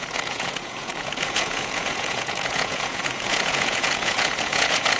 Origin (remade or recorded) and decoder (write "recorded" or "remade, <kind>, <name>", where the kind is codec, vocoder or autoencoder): remade, vocoder, Vocos